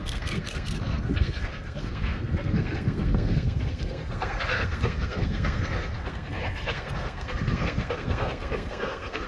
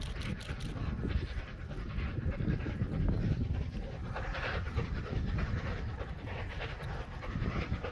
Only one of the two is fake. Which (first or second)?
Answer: first